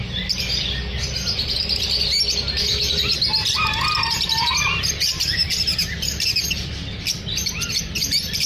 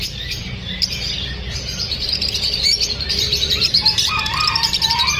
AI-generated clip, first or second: second